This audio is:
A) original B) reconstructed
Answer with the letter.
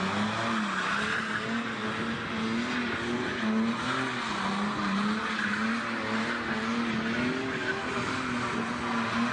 A